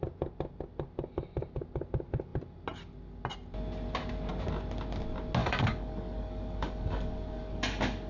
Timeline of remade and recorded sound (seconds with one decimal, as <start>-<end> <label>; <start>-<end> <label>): 0.0-5.4 recorded; 5.4-8.1 remade

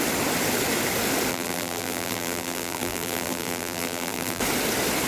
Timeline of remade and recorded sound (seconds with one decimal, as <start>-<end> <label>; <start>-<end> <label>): 0.0-1.3 recorded; 1.3-4.4 remade; 4.4-5.1 recorded